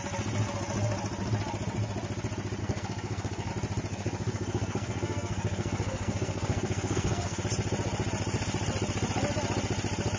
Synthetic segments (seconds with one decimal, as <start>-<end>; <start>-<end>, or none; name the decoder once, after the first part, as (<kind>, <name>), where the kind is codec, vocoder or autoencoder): 2.6-3.5 (codec, SNAC); 3.9-7.4